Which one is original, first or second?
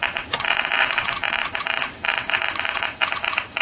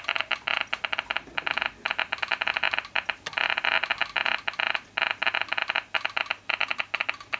second